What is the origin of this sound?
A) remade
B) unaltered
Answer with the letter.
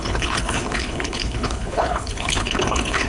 A